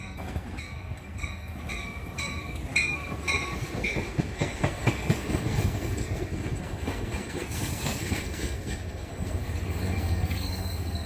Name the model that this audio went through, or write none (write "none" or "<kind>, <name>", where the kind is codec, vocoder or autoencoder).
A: codec, SNAC